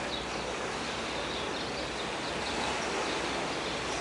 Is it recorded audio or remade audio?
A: recorded